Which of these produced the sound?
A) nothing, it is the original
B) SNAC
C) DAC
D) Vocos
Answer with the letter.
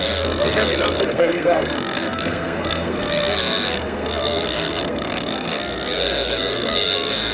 B